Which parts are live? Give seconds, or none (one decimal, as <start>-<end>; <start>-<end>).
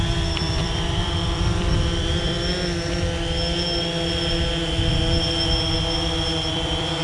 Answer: 2.3-6.5